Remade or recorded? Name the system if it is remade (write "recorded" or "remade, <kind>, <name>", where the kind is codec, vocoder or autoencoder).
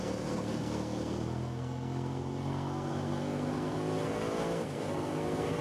remade, codec, SNAC